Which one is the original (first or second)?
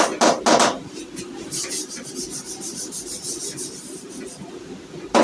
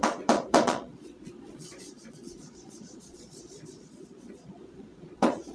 first